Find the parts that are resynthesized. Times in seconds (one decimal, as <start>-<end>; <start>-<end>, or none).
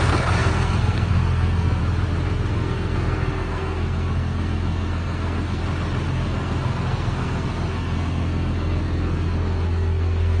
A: 0.0-1.8; 2.5-5.6; 6.1-10.4